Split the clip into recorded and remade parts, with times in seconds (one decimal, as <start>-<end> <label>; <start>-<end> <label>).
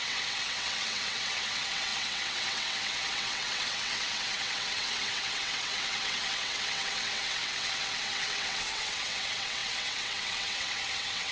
0.0-11.3 remade